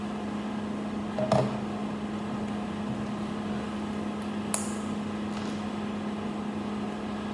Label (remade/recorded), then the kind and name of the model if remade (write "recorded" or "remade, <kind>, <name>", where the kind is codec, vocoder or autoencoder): recorded